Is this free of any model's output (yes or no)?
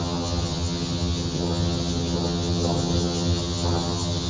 no